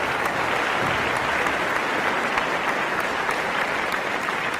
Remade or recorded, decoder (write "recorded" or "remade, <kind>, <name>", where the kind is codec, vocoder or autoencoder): recorded